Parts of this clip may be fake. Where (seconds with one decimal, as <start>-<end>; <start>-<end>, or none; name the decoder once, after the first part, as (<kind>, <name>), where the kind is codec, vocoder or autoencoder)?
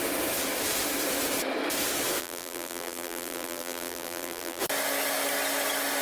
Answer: 2.2-4.6 (vocoder, BigVGAN v2)